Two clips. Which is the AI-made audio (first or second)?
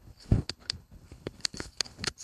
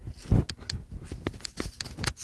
first